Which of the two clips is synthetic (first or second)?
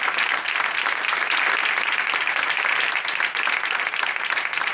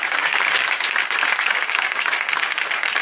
second